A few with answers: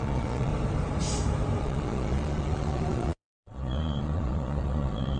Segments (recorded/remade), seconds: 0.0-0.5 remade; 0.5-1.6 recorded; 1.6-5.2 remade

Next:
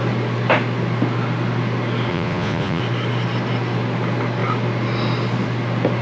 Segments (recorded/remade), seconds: 0.0-2.1 recorded; 2.1-2.8 remade; 2.8-6.0 recorded

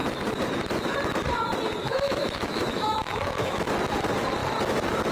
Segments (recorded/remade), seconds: 0.0-1.8 recorded; 1.8-3.6 remade; 3.6-5.1 recorded

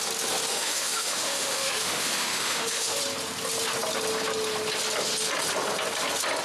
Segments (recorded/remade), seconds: 0.0-0.5 recorded; 0.5-3.0 remade; 3.0-6.4 recorded

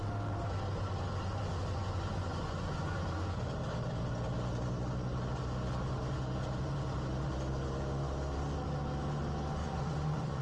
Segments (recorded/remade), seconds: 0.0-1.8 recorded; 1.8-3.6 remade; 3.6-9.6 recorded; 9.6-10.4 remade

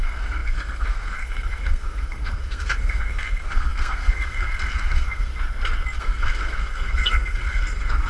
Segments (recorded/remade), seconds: 0.0-5.3 remade; 5.3-6.0 recorded; 6.0-8.1 remade